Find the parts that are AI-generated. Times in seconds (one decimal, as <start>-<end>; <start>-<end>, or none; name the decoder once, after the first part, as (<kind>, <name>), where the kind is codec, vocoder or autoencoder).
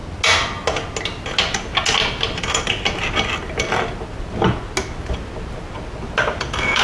none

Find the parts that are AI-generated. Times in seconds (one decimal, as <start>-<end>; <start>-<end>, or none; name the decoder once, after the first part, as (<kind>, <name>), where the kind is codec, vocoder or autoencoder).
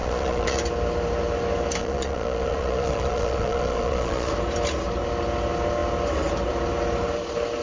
0.0-0.6 (vocoder, Vocos); 1.8-4.3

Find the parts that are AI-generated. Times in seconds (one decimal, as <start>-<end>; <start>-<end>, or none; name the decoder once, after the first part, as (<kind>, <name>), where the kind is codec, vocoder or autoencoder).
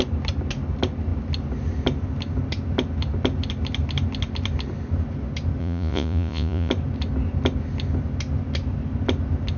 5.6-6.7 (vocoder, Vocos)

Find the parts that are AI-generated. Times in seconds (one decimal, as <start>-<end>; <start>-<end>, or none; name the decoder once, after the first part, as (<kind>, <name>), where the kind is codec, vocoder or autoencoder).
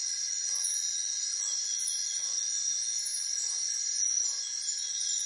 none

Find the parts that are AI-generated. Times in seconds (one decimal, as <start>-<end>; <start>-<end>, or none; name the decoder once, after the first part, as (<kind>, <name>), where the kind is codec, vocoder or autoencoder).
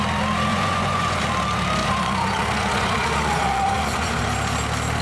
0.5-1.2 (vocoder, Vocos); 1.8-4.2